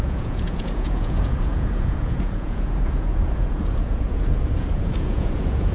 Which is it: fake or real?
fake